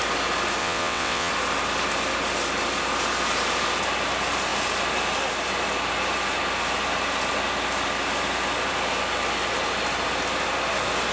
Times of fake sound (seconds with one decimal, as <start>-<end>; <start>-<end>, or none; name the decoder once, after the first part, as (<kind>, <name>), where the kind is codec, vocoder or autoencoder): 0.6-1.3 (vocoder, WaveNeXt)